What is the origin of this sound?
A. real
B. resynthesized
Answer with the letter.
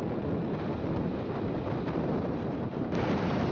A